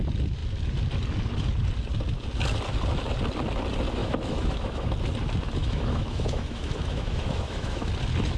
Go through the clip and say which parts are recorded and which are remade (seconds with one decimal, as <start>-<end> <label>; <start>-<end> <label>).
0.0-4.0 recorded; 4.0-4.9 remade; 4.9-5.6 recorded; 5.6-7.9 remade; 7.9-8.4 recorded